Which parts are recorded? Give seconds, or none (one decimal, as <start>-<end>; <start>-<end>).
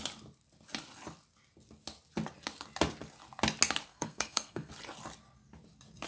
0.0-3.9; 4.7-6.1